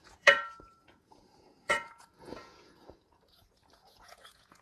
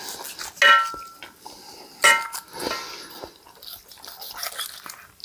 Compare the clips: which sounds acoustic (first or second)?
second